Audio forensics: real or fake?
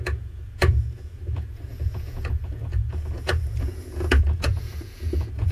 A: fake